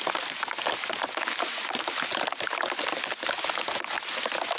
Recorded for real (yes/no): yes